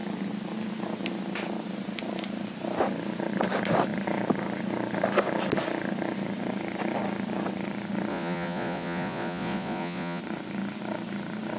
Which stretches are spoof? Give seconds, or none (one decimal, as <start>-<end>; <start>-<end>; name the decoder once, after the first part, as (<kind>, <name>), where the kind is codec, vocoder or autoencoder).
8.1-10.2 (vocoder, Vocos)